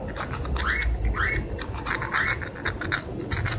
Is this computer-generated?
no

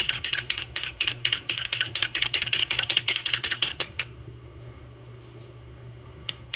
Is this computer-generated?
yes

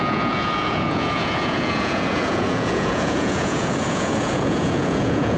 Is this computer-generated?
yes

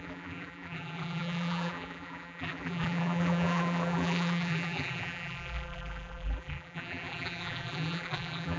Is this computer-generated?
yes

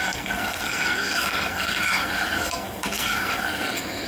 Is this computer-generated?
yes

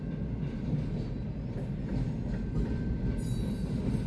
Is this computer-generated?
no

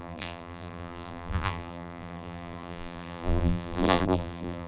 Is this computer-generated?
yes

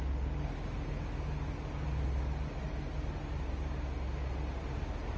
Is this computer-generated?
no